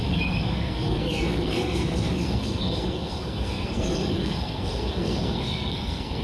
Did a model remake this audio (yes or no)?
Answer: yes